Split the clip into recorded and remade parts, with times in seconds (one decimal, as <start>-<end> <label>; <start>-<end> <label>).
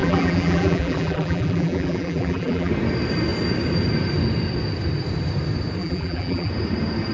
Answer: 0.0-2.7 remade; 2.7-5.8 recorded; 5.8-6.5 remade; 6.5-7.1 recorded